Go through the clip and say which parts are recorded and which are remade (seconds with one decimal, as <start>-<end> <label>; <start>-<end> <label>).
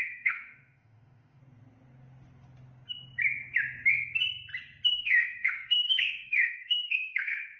0.0-1.4 remade; 1.4-4.9 recorded; 4.9-7.6 remade